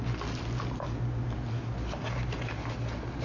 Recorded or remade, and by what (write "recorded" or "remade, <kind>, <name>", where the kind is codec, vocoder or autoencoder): recorded